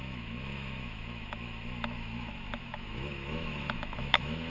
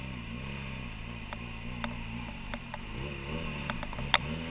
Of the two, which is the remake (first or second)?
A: first